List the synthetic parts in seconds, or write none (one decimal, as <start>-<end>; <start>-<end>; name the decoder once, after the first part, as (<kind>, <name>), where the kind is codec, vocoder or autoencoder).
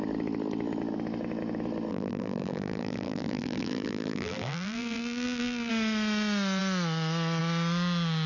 1.9-5.7 (vocoder, BigVGAN v2)